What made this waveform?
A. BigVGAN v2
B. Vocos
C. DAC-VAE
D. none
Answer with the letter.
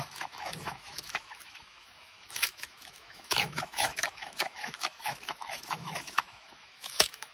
C